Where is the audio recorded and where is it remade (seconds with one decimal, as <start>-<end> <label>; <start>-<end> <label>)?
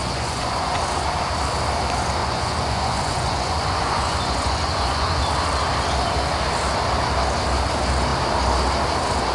0.0-0.8 remade; 0.8-2.2 recorded; 2.2-5.2 remade; 5.2-9.3 recorded